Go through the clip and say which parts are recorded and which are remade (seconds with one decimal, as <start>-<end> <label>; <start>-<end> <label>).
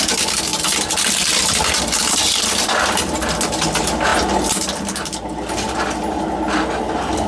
0.0-7.3 recorded